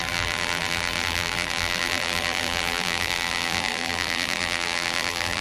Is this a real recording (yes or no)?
no